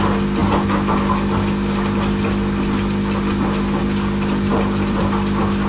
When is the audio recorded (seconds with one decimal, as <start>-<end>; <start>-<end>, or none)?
0.0-4.5; 5.1-5.7